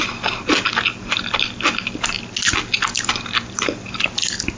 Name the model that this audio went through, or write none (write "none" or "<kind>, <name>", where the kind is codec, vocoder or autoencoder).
none